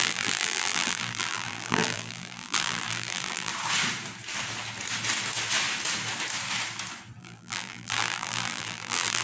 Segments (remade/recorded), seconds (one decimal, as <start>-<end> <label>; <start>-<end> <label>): 0.0-3.5 remade; 3.5-7.2 recorded; 7.2-9.2 remade